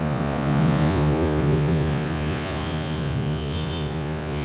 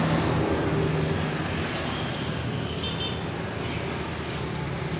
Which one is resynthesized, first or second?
first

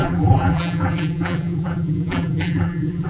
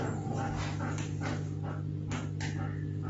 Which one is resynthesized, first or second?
first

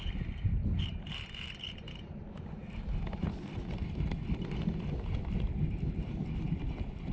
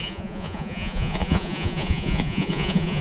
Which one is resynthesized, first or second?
second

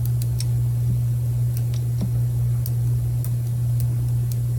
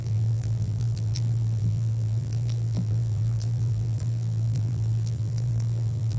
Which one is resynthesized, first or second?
second